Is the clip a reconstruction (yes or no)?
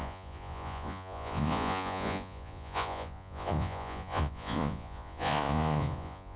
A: yes